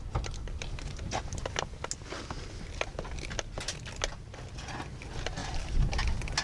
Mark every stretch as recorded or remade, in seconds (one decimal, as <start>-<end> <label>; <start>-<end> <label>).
0.0-6.4 recorded